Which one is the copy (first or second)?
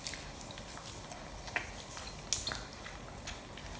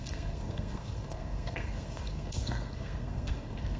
second